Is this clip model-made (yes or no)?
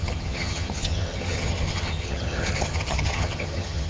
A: yes